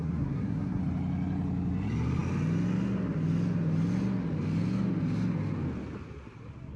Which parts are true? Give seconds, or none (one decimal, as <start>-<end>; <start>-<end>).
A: 0.8-6.8